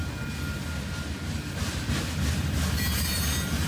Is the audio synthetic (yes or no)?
no